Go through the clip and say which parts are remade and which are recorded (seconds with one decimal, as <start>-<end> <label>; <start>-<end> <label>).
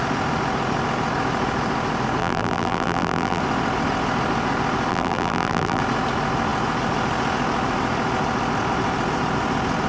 0.0-2.2 recorded; 2.2-3.4 remade; 3.4-4.9 recorded; 4.9-5.8 remade; 5.8-9.9 recorded